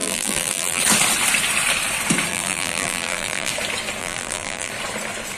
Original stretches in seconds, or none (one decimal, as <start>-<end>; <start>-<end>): 0.8-2.3; 3.5-4.0; 4.7-5.4

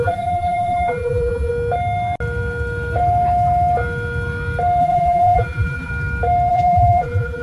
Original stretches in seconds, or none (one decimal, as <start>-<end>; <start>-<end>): 1.5-4.8; 5.9-6.5

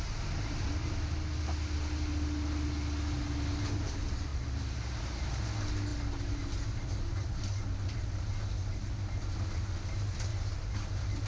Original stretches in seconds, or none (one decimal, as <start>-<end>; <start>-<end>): 0.0-4.3; 5.3-10.3

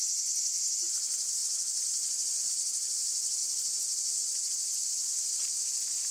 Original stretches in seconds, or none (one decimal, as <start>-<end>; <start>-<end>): 0.0-1.4; 2.5-3.4